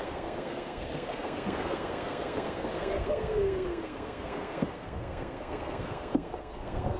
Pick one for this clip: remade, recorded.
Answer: remade